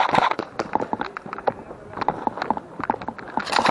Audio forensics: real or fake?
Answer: real